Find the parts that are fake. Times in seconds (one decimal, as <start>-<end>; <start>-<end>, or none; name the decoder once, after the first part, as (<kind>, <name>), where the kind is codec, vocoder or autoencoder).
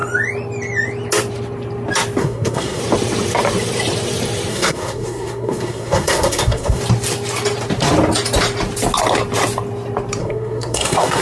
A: 2.2-2.8 (codec, SNAC); 4.5-6.8; 10.2-11.2